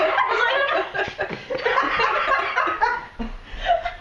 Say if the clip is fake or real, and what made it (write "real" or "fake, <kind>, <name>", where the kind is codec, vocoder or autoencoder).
real